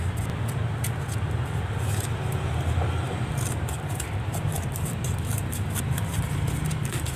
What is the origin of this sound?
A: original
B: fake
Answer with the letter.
A